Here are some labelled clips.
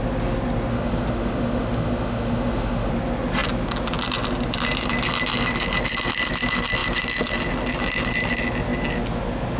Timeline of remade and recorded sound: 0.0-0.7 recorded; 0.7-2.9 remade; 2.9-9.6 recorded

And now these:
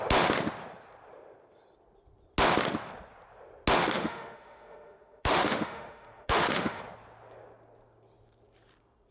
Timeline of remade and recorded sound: 0.0-3.8 recorded; 3.8-6.8 remade; 6.8-9.1 recorded

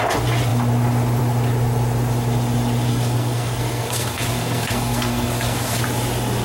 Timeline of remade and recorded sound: 0.0-2.9 recorded; 2.9-5.8 remade; 5.8-6.4 recorded

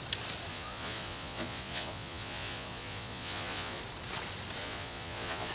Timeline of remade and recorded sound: 0.0-0.5 recorded; 0.5-3.8 remade; 3.8-4.6 recorded; 4.6-5.5 remade

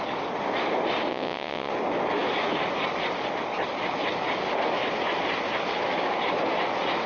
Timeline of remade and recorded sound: 0.0-1.1 recorded; 1.1-1.7 remade; 1.7-7.1 recorded

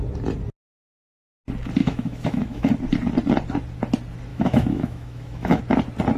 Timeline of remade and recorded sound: 0.0-1.8 recorded; 1.8-2.7 remade; 2.7-4.3 recorded; 4.3-5.6 remade; 5.6-6.2 recorded

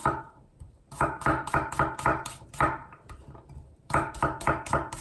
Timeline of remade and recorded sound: 0.0-1.7 remade; 1.7-2.1 recorded; 2.1-5.0 remade